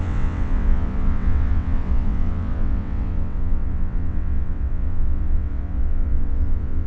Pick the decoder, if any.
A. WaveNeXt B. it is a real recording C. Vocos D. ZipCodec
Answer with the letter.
A